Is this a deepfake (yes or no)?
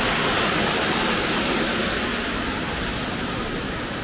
no